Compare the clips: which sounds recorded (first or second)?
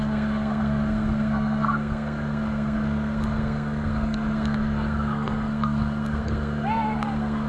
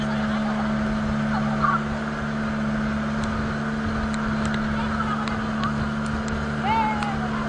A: second